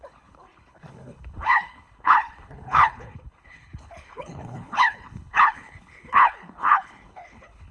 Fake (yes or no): yes